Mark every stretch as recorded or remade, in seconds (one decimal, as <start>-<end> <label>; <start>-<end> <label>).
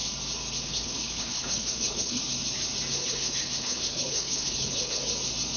0.0-0.6 recorded; 0.6-2.2 remade; 2.2-2.9 recorded; 2.9-5.0 remade; 5.0-5.6 recorded